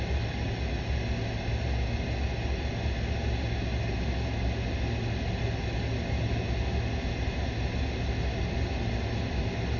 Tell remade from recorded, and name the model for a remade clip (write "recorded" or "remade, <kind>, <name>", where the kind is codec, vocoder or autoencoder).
recorded